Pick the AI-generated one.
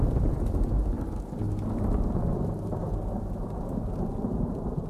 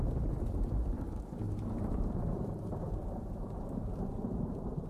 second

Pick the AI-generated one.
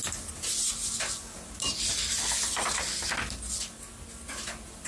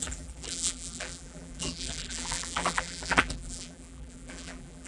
second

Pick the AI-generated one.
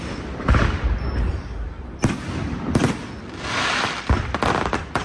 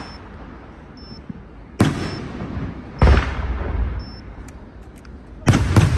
first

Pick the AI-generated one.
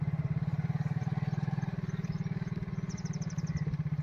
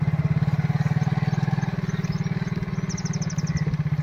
first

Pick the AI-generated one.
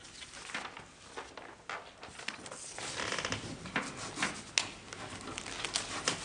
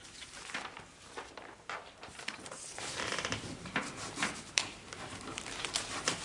second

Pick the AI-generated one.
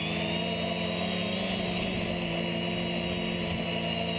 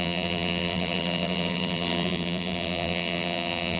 second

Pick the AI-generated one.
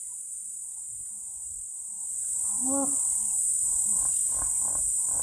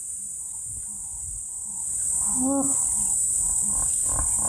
first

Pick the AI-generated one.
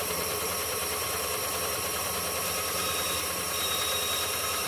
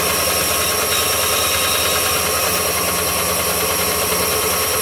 first